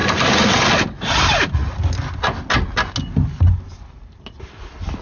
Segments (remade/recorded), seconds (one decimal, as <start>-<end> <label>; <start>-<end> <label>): 0.0-5.0 recorded